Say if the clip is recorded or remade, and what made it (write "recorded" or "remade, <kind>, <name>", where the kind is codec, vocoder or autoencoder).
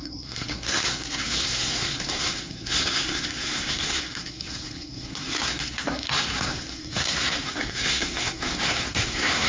remade, codec, SNAC